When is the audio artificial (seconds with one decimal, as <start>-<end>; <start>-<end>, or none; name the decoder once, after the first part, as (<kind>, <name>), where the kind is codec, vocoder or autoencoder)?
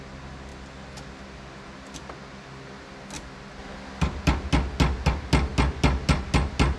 none